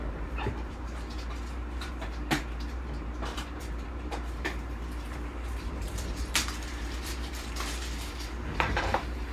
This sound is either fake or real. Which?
fake